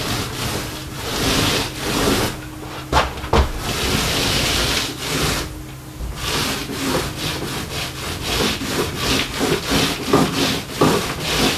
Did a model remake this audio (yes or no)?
no